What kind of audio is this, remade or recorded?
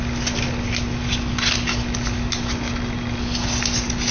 recorded